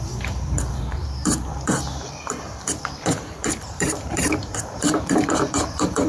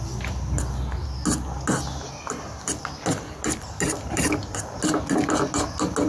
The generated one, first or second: first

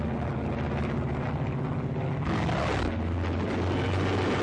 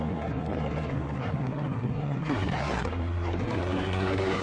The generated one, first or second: second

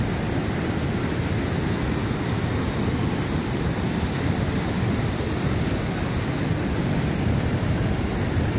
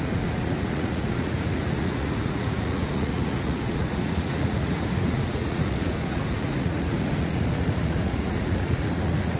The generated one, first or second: second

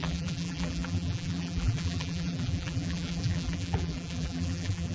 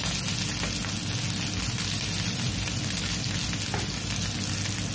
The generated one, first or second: first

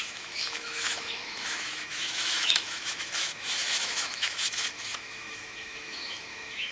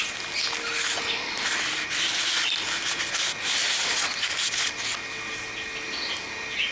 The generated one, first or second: first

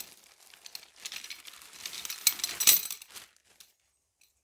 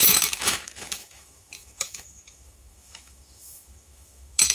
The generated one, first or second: second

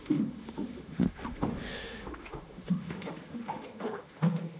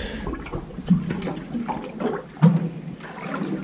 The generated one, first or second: first